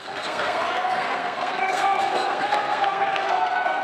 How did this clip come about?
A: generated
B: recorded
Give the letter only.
A